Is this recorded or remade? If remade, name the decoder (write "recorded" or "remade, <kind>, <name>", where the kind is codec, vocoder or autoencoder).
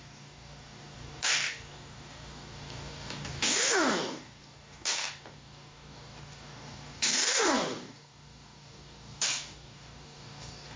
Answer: remade, codec, DAC